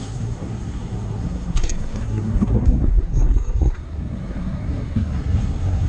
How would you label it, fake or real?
fake